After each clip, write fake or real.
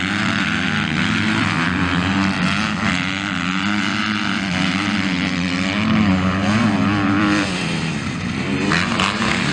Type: real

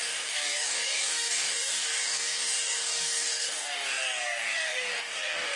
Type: fake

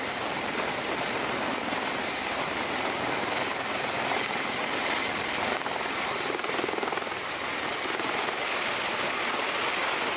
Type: real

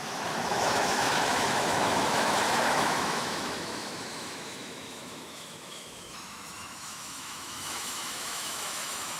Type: fake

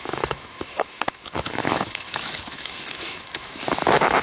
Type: fake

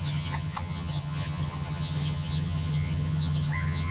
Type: fake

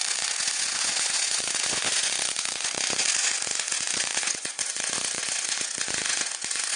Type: fake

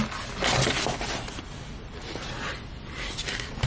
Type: real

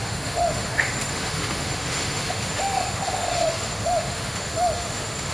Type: fake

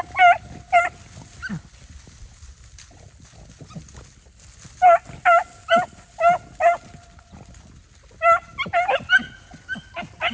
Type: real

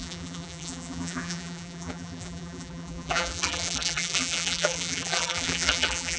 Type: fake